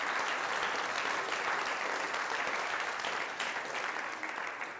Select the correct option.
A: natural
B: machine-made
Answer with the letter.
A